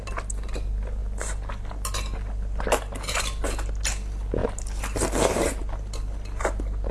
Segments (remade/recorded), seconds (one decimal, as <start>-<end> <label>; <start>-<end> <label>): 0.0-6.9 recorded